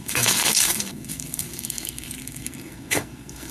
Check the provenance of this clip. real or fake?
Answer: fake